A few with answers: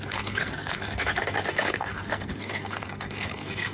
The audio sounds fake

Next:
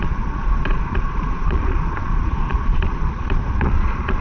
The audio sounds fake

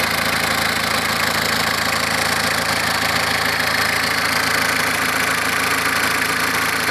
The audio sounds real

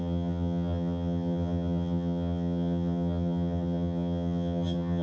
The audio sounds fake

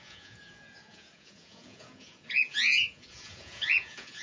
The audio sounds fake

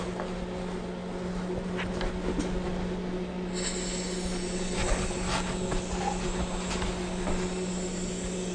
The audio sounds real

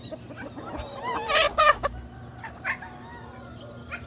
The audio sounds real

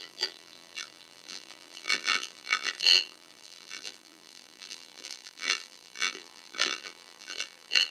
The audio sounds fake